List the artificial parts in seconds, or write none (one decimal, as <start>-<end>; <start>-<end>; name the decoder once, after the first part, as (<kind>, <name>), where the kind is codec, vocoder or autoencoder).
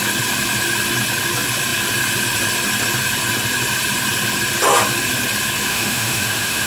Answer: 5.7-6.7 (autoencoder, DAC-VAE)